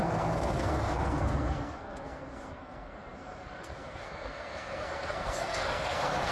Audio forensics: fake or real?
fake